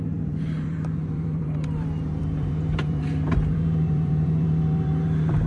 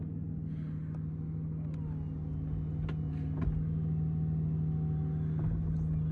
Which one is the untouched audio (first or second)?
second